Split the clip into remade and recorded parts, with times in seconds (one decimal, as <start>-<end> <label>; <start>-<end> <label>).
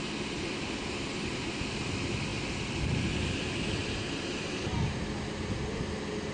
0.0-6.3 recorded